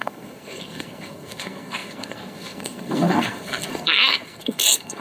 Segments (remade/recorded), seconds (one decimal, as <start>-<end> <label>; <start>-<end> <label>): 0.0-5.0 remade